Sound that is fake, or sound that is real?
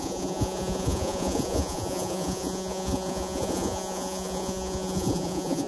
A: fake